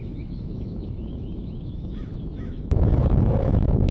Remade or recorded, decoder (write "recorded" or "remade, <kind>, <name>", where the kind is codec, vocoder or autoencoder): remade, autoencoder, DAC-VAE